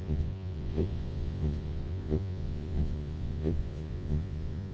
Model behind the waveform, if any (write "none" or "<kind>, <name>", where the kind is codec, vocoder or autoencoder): vocoder, Vocos